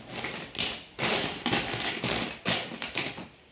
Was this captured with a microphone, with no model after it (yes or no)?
yes